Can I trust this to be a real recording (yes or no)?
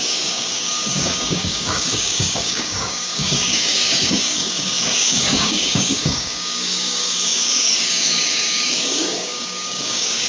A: no